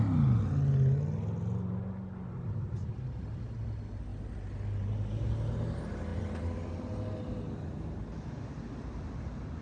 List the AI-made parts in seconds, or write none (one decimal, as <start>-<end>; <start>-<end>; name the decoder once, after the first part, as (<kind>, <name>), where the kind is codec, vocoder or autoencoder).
none